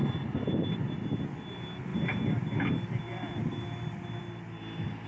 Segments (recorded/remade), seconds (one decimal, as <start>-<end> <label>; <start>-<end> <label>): 0.0-5.1 recorded